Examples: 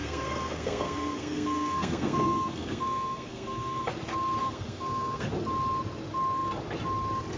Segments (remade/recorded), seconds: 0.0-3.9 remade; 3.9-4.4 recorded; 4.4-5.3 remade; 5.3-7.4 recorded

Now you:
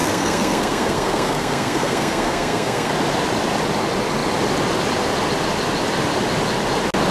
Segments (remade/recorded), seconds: 0.0-2.9 remade; 2.9-7.1 recorded

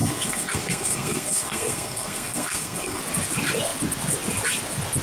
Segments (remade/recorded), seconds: 0.0-3.0 remade; 3.0-5.0 recorded